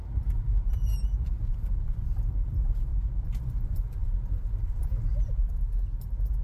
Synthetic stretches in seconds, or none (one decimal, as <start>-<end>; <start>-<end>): 0.0-2.9; 3.7-4.8; 5.3-6.4